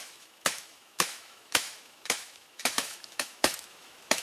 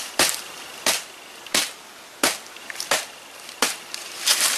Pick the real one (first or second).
second